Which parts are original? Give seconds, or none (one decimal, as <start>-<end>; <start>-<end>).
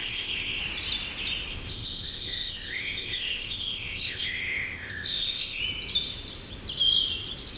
0.6-1.5; 5.6-7.6